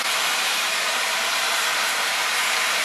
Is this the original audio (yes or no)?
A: no